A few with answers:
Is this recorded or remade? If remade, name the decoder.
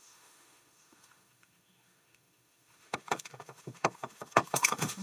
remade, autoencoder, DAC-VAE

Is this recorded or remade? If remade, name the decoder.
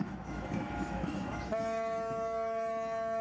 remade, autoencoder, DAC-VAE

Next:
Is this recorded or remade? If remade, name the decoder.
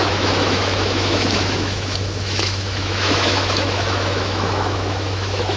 remade, autoencoder, DAC-VAE